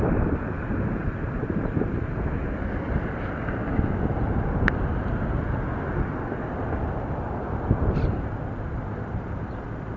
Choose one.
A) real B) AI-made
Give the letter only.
A